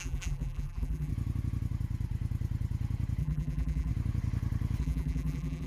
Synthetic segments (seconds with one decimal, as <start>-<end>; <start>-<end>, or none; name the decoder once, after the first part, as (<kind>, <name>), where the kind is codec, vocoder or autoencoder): 0.0-1.1 (vocoder, BigVGAN v2); 3.2-3.9; 4.8-5.7